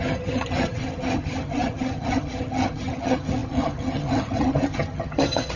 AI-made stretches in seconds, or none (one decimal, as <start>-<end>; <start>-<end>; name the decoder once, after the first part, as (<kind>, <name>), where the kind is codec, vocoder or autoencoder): 0.0-5.6 (vocoder, HiFi-GAN)